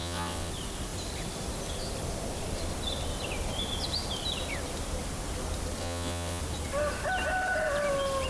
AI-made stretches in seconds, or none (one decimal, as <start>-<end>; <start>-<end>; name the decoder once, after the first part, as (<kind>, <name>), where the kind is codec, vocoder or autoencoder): 0.0-0.5 (vocoder, WaveNeXt); 5.8-6.4